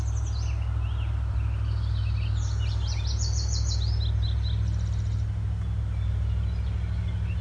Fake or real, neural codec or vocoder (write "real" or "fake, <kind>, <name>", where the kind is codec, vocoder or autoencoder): real